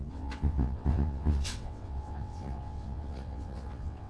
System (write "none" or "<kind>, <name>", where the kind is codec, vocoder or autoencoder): vocoder, WaveNeXt